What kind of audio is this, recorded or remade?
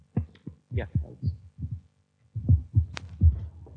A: recorded